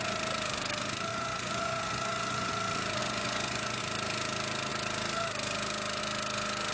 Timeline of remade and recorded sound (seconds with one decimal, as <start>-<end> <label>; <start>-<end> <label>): 0.0-1.1 recorded; 1.1-2.5 remade; 2.5-3.0 recorded; 3.0-3.8 remade; 3.8-6.7 recorded